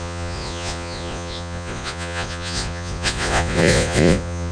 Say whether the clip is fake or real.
fake